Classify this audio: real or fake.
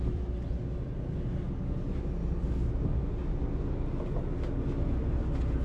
real